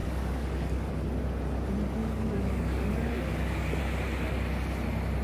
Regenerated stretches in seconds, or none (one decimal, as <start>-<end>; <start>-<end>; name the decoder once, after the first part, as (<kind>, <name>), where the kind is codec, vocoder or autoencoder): 0.0-0.9 (codec, DAC); 2.0-3.8